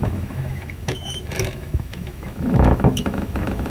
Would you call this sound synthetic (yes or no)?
yes